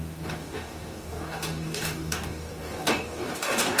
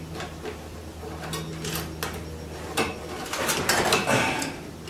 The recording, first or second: second